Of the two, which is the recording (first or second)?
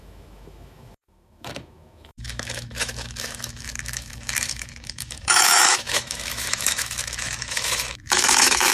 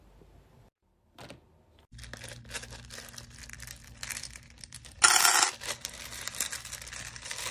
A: second